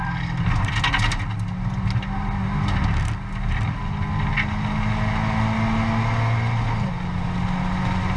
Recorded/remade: recorded